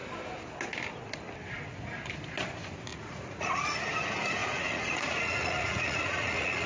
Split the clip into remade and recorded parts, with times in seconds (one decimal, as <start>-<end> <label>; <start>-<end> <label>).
0.0-2.9 recorded; 2.9-3.8 remade; 3.8-4.4 recorded; 4.4-6.7 remade